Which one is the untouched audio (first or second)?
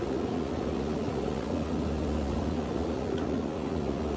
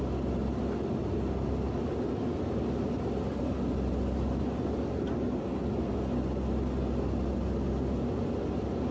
second